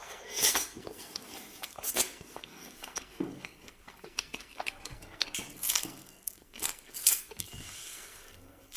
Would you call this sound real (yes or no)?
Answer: no